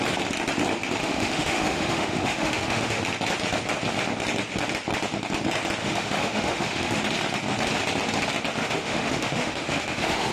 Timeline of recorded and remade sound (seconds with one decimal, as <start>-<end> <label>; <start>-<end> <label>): 0.0-1.0 recorded; 1.0-3.0 remade; 3.0-5.8 recorded; 5.8-7.0 remade; 7.0-8.6 recorded; 8.6-10.3 remade